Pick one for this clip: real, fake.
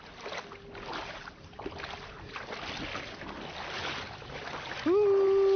real